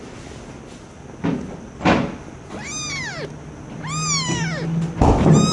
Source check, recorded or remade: recorded